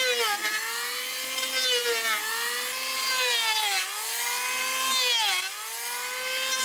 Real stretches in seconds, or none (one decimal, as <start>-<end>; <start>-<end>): 0.0-6.6